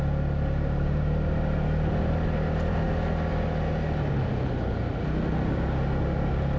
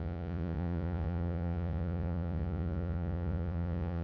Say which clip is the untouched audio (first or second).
first